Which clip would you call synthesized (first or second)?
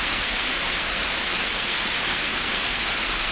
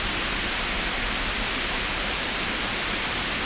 first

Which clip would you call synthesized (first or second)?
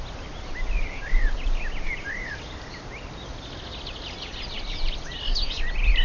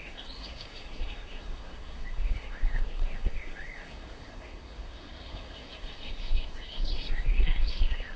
second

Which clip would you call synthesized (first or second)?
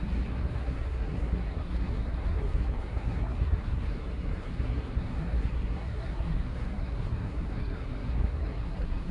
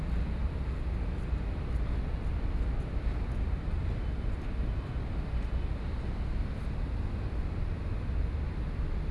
first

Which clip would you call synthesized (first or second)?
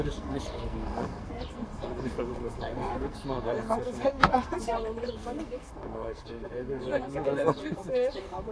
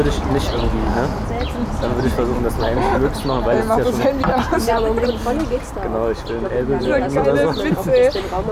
first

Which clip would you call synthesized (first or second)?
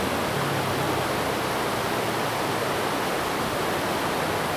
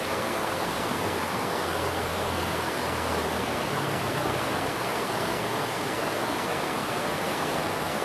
second